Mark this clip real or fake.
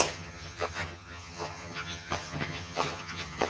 fake